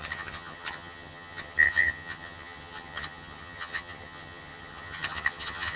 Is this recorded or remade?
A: remade